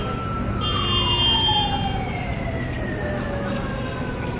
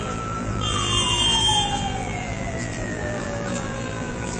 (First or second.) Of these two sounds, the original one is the first